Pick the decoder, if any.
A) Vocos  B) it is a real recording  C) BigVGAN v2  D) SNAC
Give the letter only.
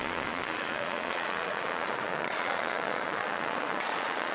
A